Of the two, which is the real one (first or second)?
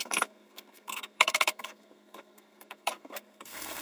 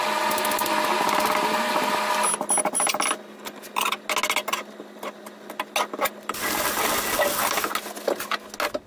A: second